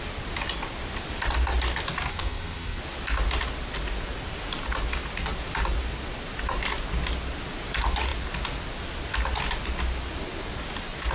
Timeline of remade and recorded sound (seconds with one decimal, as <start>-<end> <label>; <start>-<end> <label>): 0.0-2.1 recorded; 2.1-2.8 remade; 2.8-11.1 recorded